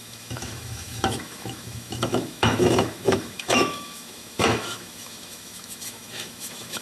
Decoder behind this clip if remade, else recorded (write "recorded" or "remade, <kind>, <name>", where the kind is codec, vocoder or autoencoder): remade, autoencoder, DAC-VAE